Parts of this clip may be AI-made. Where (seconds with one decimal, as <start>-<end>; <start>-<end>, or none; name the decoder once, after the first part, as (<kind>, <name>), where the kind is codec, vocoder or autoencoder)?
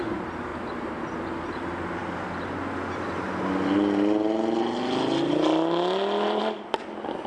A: 0.5-1.1 (vocoder, BigVGAN v2)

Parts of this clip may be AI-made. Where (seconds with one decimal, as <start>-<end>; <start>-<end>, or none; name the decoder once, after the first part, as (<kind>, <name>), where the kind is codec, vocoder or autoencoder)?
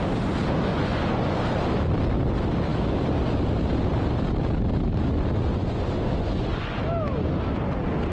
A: 0.7-1.4 (vocoder, Vocos); 5.5-6.8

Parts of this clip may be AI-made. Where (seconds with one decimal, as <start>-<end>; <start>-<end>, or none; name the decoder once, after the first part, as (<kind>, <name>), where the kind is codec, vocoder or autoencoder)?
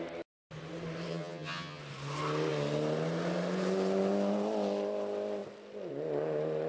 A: 1.1-1.8 (vocoder, HiFi-GAN)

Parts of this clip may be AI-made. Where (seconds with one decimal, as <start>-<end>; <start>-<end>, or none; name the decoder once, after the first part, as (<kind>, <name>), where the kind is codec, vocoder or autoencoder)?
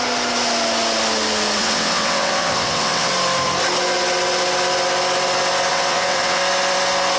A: 1.6-3.1 (vocoder, WaveNeXt); 5.7-6.4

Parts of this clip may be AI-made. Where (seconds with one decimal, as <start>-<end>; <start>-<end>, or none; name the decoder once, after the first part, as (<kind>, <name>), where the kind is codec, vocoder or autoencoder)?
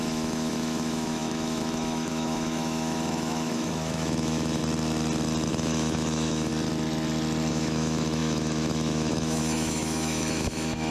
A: 0.0-4.6 (autoencoder, DAC-VAE); 5.5-6.5; 7.5-10.9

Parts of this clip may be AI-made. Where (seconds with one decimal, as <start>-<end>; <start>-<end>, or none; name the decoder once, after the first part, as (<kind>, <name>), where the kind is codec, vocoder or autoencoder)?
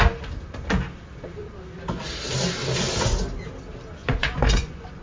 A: 4.0-5.0 (vocoder, Vocos)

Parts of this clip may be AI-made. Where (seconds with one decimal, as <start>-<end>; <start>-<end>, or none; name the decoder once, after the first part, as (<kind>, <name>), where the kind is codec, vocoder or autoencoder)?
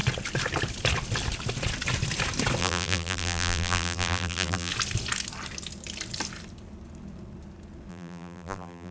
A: 2.6-4.7 (vocoder, BigVGAN v2); 7.9-8.9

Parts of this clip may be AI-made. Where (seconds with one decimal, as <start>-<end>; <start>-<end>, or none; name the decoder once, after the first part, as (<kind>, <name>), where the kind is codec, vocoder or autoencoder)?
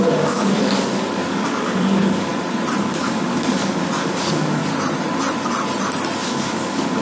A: 0.0-2.3 (codec, DAC); 2.8-4.6; 6.2-7.0